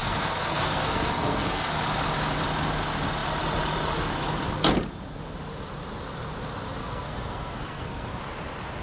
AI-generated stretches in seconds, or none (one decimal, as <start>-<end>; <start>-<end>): 0.0-1.8; 6.8-8.2